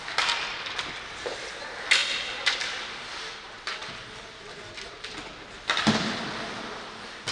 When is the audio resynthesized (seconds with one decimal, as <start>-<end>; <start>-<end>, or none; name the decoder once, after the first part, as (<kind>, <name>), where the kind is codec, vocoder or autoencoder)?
none